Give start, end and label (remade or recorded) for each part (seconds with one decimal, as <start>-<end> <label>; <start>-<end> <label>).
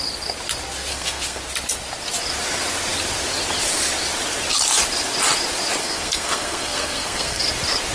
0.0-0.9 recorded; 0.9-1.4 remade; 1.4-5.8 recorded; 5.8-7.4 remade; 7.4-7.9 recorded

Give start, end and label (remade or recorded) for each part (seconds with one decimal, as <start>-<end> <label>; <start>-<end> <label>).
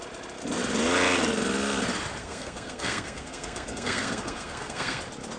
0.0-2.2 recorded; 2.2-5.0 remade; 5.0-5.4 recorded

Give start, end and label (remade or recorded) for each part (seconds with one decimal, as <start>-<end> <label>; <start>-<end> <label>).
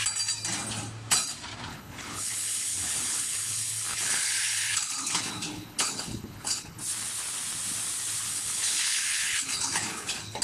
0.0-1.7 recorded; 1.7-6.8 remade; 6.8-8.3 recorded; 8.3-10.4 remade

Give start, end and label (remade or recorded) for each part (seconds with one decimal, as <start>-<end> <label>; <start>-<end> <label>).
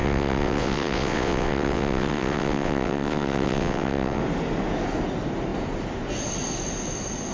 0.0-4.2 remade; 4.2-7.3 recorded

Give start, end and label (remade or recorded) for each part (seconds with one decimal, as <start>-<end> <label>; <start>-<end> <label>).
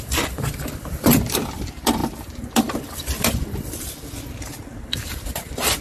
0.0-5.8 remade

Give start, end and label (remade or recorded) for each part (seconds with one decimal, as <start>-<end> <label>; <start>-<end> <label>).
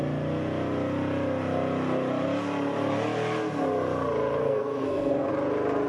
0.0-4.4 recorded; 4.4-5.3 remade; 5.3-5.9 recorded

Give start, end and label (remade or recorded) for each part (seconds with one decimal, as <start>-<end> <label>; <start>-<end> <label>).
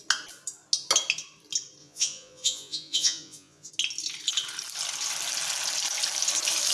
0.0-1.8 recorded; 1.8-3.7 remade; 3.7-6.7 recorded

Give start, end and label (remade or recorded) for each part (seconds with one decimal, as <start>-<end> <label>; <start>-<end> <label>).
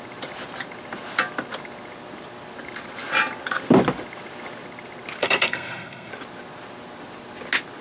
0.0-5.2 recorded; 5.2-6.1 remade; 6.1-7.8 recorded